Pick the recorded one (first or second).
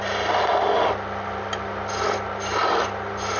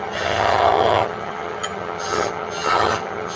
first